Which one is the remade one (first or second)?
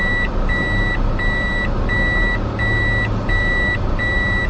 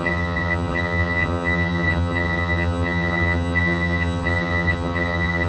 second